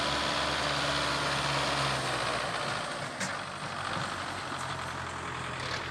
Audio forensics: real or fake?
real